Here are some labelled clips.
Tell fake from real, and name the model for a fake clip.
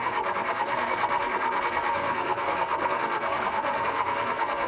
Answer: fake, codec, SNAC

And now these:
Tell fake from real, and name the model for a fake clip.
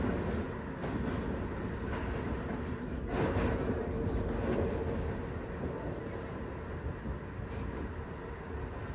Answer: real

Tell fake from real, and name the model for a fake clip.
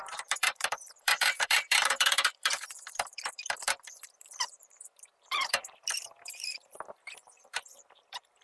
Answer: fake, vocoder, BigVGAN v2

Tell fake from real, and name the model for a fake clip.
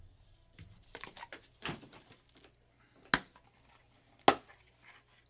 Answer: real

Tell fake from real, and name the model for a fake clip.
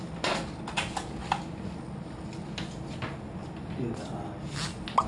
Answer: real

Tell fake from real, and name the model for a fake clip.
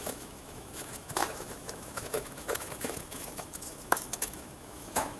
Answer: fake, autoencoder, DAC-VAE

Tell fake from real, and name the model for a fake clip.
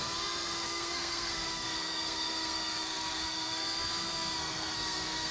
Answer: fake, codec, SNAC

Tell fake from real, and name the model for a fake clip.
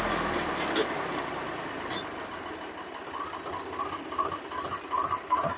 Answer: real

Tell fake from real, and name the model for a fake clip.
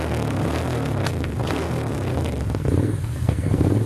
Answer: fake, codec, SNAC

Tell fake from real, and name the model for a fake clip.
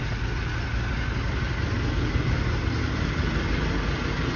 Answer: real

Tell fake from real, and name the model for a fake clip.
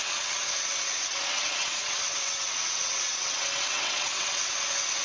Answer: fake, vocoder, WaveNeXt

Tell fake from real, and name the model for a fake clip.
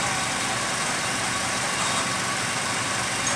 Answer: real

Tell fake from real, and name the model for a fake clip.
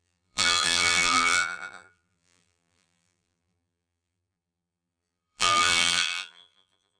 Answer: fake, vocoder, BigVGAN v2